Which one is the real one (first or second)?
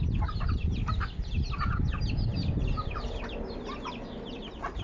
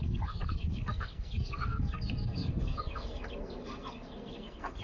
first